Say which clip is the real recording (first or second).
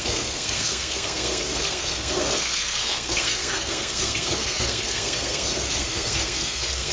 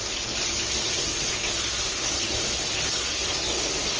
second